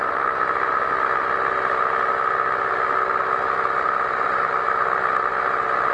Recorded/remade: recorded